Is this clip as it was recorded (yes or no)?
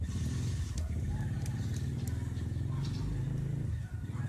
yes